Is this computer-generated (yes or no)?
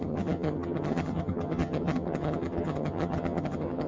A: yes